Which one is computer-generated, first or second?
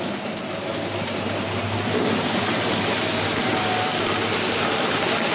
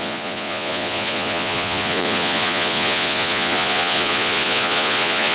second